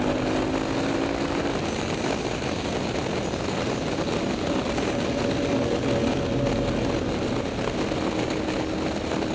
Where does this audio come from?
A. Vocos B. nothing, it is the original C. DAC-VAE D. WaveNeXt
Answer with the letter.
B